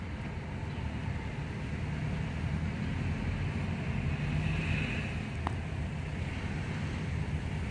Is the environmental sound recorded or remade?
recorded